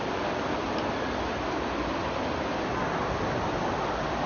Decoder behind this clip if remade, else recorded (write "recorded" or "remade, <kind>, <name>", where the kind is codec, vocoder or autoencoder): recorded